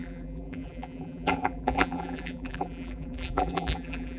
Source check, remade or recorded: remade